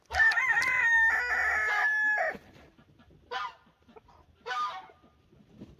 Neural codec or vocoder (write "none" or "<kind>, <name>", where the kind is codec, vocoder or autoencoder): none